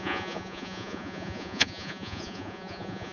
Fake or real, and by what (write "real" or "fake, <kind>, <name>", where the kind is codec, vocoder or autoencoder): fake, vocoder, Vocos